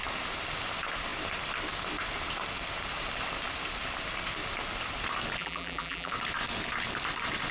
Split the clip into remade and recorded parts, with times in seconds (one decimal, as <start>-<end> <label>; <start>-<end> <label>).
0.0-5.4 recorded; 5.4-6.1 remade; 6.1-7.5 recorded